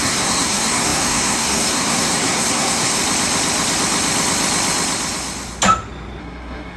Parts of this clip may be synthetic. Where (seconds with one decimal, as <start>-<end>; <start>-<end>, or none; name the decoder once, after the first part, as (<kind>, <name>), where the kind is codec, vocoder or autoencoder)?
0.0-3.0 (codec, SNAC); 6.2-6.8